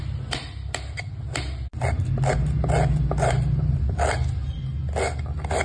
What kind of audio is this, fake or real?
real